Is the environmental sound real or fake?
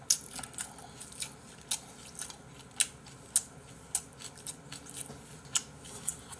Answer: real